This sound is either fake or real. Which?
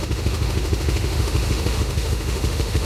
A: fake